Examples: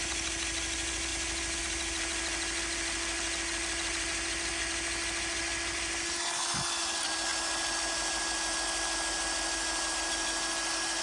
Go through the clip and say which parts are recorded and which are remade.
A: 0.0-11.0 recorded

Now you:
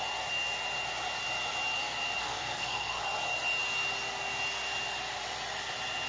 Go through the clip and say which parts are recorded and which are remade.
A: 0.0-2.2 recorded; 2.2-3.0 remade; 3.0-6.1 recorded

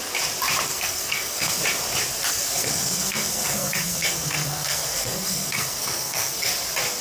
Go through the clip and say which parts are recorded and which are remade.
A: 0.0-0.7 recorded; 0.7-1.6 remade; 1.6-2.3 recorded; 2.3-6.5 remade; 6.5-7.0 recorded

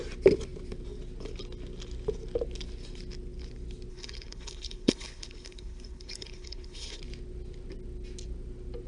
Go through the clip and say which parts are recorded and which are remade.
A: 0.0-3.9 recorded; 3.9-7.0 remade; 7.0-8.9 recorded

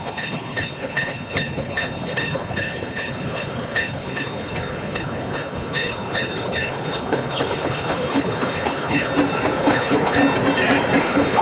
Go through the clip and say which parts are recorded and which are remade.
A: 0.0-9.1 remade; 9.1-9.6 recorded; 9.6-10.2 remade; 10.2-11.0 recorded; 11.0-11.4 remade